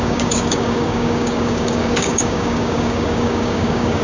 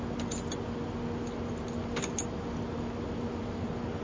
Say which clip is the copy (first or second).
first